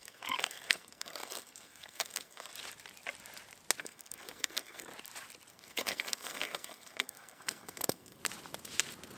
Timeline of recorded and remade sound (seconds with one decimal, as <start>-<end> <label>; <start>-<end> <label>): 0.0-2.5 remade; 2.5-3.8 recorded; 3.8-4.9 remade; 4.9-5.5 recorded; 5.5-8.2 remade; 8.2-9.2 recorded